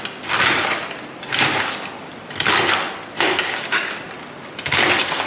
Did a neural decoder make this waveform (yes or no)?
no